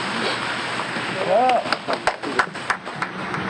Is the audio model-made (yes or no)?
no